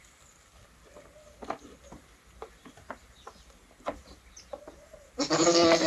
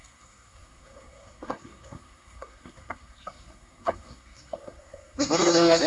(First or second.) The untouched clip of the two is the first